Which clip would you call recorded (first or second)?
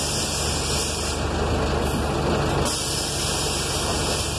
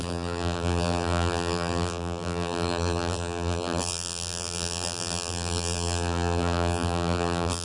first